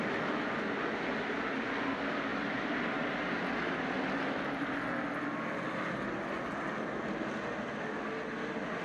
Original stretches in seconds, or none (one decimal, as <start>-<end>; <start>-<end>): 0.0-2.3; 3.1-8.8